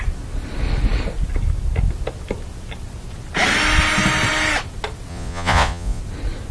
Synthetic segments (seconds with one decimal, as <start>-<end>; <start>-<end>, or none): 5.1-6.0

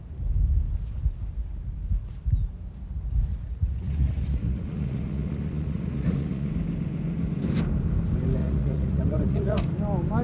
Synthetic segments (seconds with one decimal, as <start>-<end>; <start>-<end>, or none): 3.3-6.5; 8.4-9.6

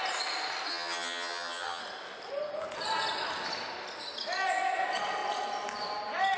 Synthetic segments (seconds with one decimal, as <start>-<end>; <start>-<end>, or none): 0.7-1.8

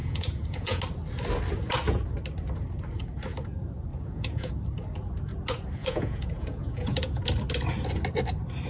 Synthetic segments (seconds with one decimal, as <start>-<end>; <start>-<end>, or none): 0.0-0.8; 3.9-4.5; 5.8-7.2